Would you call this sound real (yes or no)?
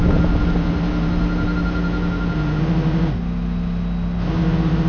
yes